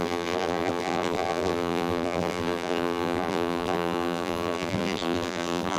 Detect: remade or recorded remade